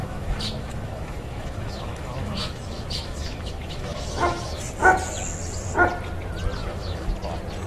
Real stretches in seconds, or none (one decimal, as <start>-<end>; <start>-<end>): 4.6-6.6; 7.1-7.7